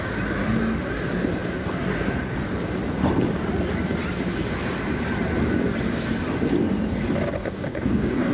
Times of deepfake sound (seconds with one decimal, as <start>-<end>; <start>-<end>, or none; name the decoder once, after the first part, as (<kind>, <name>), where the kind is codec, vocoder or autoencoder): 7.4-8.3 (codec, DAC)